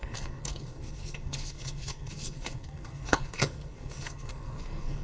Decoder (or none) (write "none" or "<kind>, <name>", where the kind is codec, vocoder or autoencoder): codec, SNAC